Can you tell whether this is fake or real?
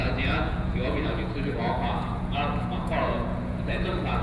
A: fake